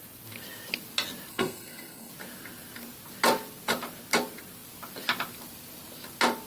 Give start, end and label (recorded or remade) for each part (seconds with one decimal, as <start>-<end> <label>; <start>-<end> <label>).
0.0-1.3 recorded; 1.3-2.1 remade; 2.1-6.5 recorded